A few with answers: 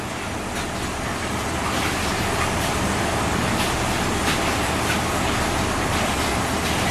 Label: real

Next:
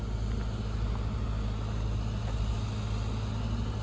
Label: real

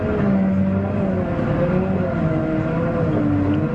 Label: real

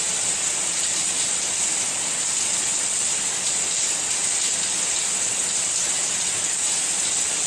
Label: real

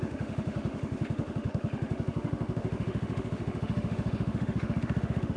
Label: fake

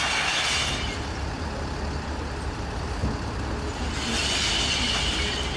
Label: real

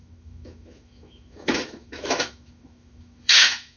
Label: fake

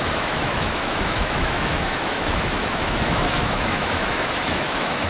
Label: fake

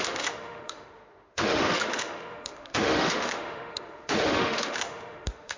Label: fake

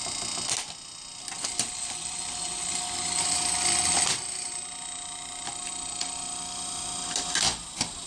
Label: real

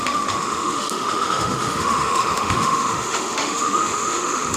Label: fake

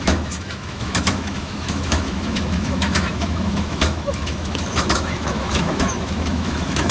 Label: fake